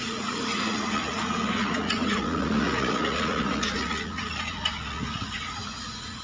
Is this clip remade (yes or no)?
yes